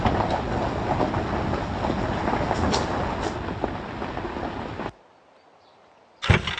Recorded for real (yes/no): yes